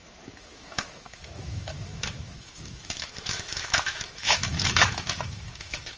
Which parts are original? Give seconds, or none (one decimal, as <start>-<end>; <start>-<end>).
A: none